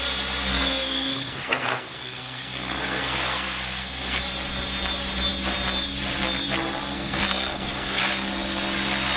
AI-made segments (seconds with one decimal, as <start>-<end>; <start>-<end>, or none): 0.5-4.2; 6.9-8.0